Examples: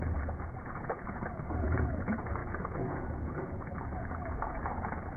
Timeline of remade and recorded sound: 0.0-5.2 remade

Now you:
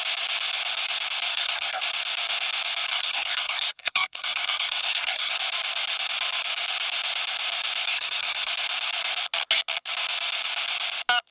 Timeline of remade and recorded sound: 0.0-1.3 recorded; 1.3-1.8 remade; 1.8-2.9 recorded; 2.9-5.3 remade; 5.3-7.9 recorded; 7.9-8.5 remade; 8.5-11.3 recorded

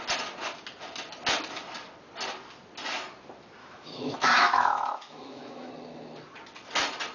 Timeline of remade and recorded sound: 0.0-3.6 recorded; 3.6-5.7 remade; 5.7-7.1 recorded

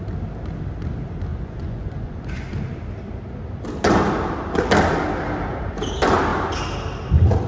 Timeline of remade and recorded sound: 0.0-1.3 recorded; 1.3-2.5 remade; 2.5-7.5 recorded

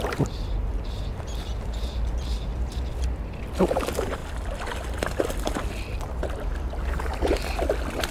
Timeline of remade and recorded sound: 0.0-8.1 recorded

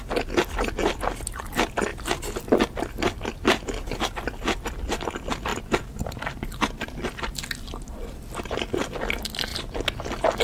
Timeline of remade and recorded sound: 0.0-10.4 recorded

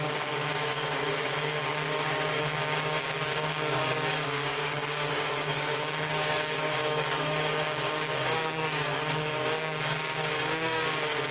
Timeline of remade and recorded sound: 0.0-11.3 remade